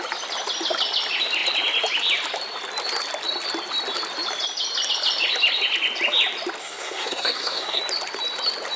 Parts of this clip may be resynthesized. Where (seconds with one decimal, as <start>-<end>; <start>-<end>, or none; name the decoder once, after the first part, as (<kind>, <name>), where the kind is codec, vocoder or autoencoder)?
6.6-7.8 (codec, SNAC)

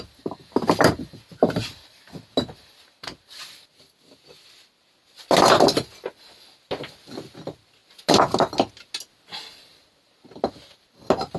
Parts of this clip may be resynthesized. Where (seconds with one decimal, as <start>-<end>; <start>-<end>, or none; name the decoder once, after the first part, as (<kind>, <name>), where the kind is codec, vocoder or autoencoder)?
none

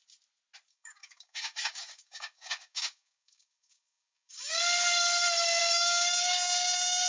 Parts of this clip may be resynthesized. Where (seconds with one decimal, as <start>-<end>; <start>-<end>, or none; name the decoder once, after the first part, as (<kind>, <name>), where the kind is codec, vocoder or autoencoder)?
0.7-4.6 (codec, DAC); 5.6-7.1

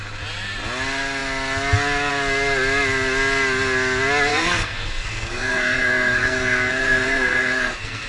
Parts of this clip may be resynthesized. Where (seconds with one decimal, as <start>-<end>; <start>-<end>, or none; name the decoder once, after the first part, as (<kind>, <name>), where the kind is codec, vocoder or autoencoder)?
4.3-8.1 (codec, SNAC)

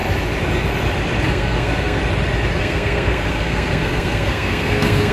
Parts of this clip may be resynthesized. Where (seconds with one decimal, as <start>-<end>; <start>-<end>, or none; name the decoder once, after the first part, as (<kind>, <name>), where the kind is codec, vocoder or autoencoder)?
1.3-2.0 (codec, SNAC); 2.6-5.1